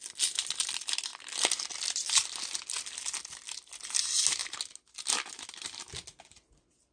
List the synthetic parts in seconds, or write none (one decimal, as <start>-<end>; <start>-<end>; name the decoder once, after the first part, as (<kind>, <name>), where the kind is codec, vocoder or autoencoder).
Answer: none